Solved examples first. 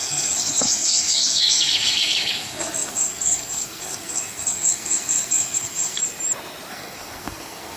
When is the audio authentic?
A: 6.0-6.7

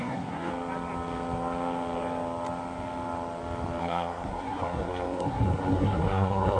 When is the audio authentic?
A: 0.5-3.8

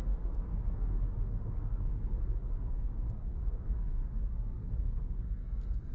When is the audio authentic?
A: none

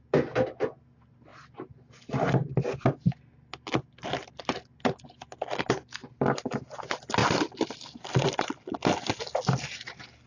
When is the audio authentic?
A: 0.0-7.2; 9.2-10.3